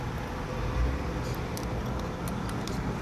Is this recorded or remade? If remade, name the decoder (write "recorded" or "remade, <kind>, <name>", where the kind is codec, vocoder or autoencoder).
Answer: recorded